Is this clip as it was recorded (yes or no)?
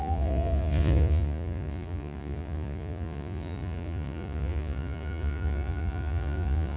no